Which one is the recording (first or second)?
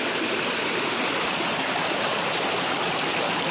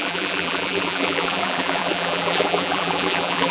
first